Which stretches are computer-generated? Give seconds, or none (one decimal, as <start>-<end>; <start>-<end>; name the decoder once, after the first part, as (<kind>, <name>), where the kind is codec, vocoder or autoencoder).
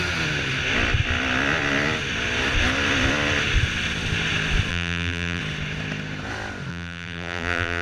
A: 4.7-5.4 (vocoder, BigVGAN v2); 6.7-7.8